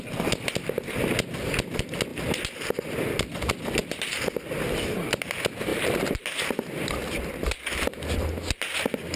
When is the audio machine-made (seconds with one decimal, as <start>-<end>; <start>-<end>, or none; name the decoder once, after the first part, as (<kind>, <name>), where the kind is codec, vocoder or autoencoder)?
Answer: 2.1-2.8 (vocoder, BigVGAN v2); 3.8-4.5; 5.7-8.3